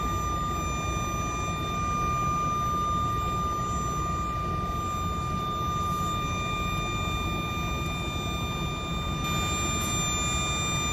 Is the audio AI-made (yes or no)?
no